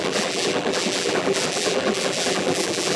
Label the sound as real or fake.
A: fake